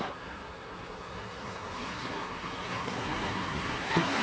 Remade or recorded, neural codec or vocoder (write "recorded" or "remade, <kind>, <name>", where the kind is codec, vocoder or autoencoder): remade, codec, SNAC